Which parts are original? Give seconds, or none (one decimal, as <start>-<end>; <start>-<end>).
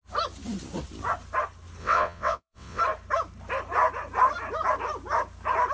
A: 0.0-1.8; 2.8-5.7